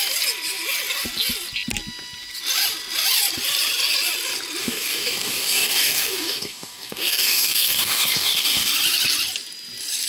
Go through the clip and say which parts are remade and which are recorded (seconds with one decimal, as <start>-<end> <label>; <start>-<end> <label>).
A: 0.0-4.6 recorded; 4.6-8.7 remade; 8.7-10.1 recorded